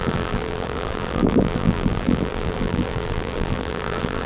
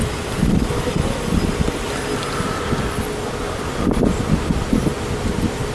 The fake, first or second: first